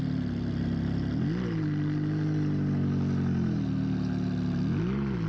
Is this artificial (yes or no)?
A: no